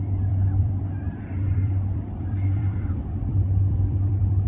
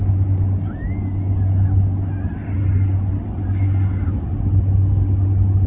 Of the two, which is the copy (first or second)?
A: first